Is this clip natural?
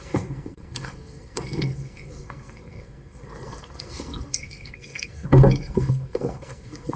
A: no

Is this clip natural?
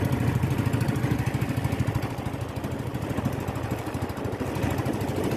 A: yes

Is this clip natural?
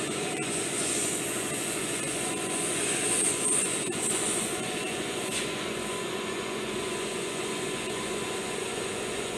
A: no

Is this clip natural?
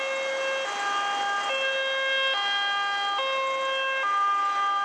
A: yes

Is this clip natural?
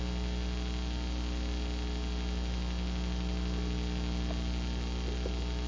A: yes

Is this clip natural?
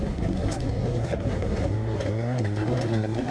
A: no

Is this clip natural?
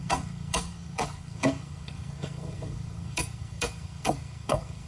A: no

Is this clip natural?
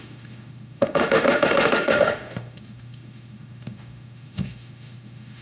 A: no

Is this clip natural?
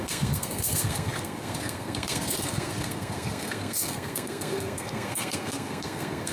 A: no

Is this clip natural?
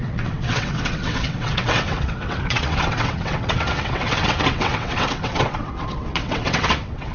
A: no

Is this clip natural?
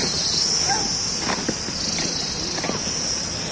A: yes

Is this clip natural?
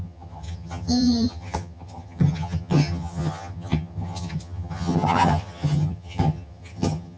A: no